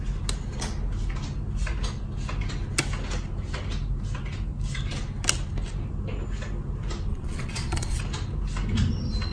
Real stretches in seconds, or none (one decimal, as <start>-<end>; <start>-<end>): 0.0-7.1; 8.0-9.3